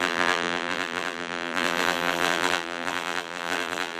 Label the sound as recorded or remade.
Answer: remade